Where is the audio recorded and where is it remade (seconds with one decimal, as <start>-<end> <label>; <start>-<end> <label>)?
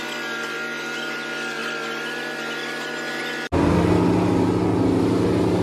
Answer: 0.0-5.6 recorded